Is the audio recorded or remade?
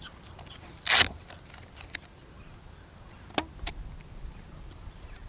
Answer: recorded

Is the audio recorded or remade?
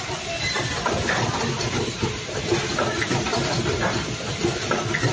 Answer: recorded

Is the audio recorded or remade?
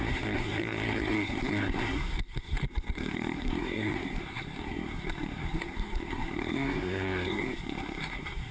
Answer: remade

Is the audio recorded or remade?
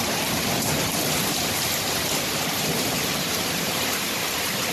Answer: remade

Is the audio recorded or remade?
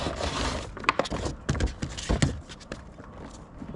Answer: recorded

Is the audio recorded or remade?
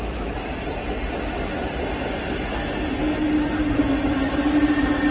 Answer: recorded